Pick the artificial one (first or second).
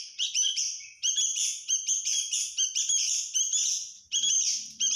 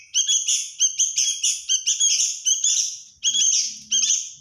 first